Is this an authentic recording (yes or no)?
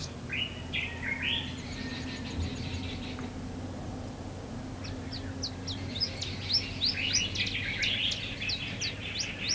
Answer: yes